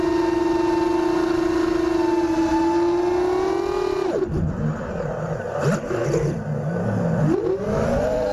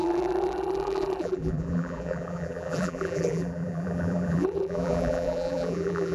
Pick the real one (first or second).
first